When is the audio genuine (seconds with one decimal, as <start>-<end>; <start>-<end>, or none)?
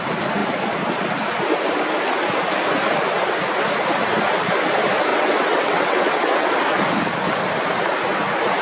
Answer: 0.0-5.1; 6.5-8.6